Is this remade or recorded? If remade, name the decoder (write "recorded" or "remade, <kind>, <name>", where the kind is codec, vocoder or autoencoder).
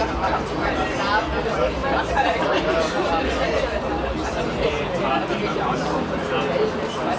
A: recorded